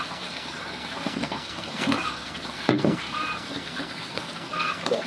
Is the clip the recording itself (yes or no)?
no